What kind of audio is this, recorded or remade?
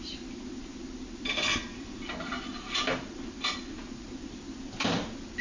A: recorded